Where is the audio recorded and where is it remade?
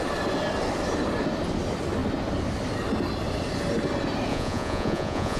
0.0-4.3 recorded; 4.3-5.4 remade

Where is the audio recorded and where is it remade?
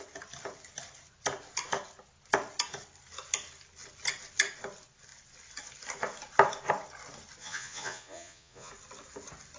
0.0-7.4 recorded; 7.4-8.7 remade; 8.7-9.6 recorded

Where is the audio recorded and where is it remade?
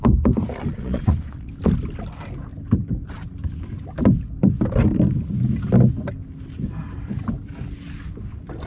0.0-0.5 recorded; 0.5-1.5 remade; 1.5-8.7 recorded